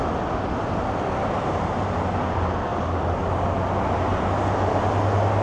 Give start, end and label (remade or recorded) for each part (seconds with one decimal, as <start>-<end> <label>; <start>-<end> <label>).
0.0-5.4 recorded